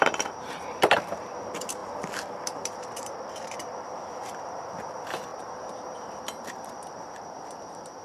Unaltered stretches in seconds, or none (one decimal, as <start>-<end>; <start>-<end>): none